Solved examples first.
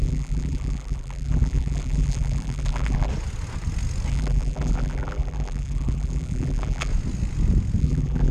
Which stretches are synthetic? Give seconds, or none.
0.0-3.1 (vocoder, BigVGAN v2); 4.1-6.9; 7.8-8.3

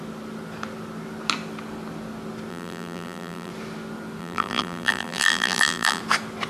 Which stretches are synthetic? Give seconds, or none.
2.5-3.5 (vocoder, BigVGAN v2); 4.2-6.0

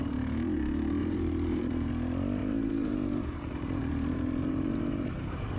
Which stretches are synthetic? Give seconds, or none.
1.0-1.9 (vocoder, BigVGAN v2); 2.4-5.6